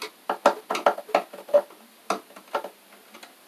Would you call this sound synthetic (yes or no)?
no